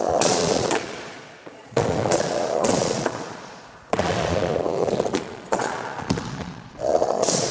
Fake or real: fake